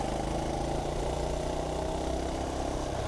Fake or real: real